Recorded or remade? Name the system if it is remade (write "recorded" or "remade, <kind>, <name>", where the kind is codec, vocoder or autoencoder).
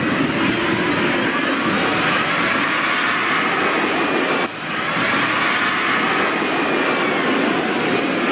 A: recorded